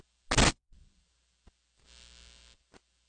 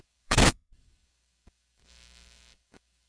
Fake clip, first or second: second